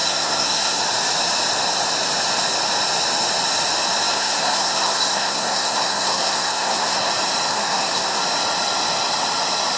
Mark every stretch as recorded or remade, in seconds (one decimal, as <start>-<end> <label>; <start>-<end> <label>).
0.0-0.8 remade; 0.8-4.1 recorded; 4.1-7.1 remade; 7.1-7.5 recorded; 7.5-8.2 remade; 8.2-9.8 recorded